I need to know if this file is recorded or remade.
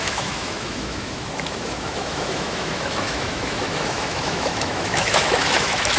remade